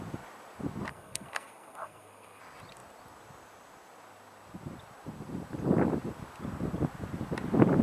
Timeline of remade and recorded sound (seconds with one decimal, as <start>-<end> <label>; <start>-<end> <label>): 0.0-0.9 recorded; 0.9-2.4 remade; 2.4-7.8 recorded